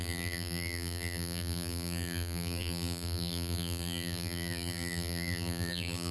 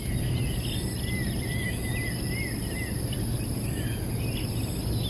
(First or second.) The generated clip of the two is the first